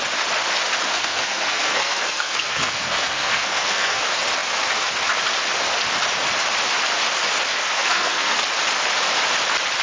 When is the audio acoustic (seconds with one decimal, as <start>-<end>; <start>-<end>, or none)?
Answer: 0.0-0.9; 4.0-7.5; 8.4-9.8